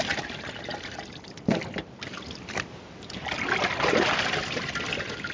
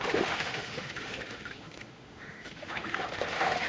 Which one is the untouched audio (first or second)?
first